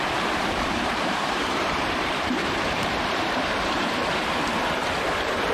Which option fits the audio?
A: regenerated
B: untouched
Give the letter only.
A